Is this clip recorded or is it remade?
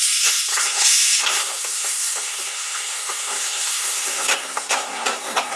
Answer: remade